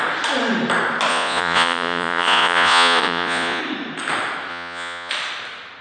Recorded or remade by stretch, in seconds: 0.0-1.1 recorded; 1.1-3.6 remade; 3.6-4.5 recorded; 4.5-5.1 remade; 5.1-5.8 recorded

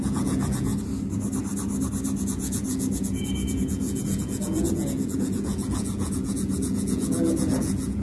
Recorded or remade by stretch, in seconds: 0.0-0.7 remade; 0.7-2.2 recorded; 2.2-8.0 remade

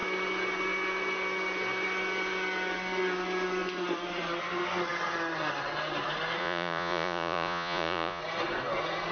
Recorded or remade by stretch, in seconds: 0.0-6.4 recorded; 6.4-8.2 remade; 8.2-9.1 recorded

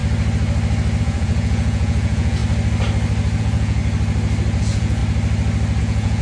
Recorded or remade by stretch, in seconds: 0.0-1.0 recorded; 1.0-2.4 remade; 2.4-3.4 recorded; 3.4-3.8 remade; 3.8-4.6 recorded; 4.6-5.0 remade; 5.0-5.8 recorded; 5.8-6.2 remade

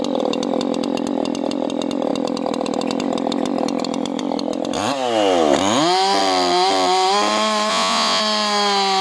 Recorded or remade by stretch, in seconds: 0.0-7.7 recorded; 7.7-8.2 remade; 8.2-9.0 recorded

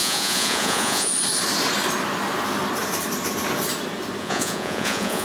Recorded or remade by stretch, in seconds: 0.0-1.1 remade; 1.1-4.2 recorded; 4.2-5.2 remade